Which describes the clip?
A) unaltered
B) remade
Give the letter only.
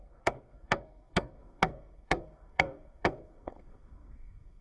B